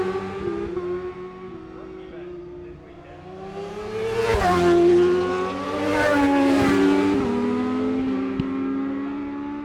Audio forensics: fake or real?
real